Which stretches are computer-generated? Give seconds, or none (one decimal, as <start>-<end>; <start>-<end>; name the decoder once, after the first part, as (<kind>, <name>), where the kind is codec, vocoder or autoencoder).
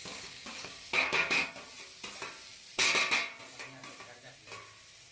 0.0-1.5 (codec, DAC)